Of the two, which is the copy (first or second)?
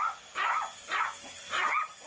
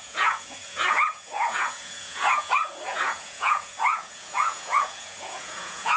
second